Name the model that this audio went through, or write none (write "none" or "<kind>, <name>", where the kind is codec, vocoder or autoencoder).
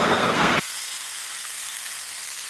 codec, SNAC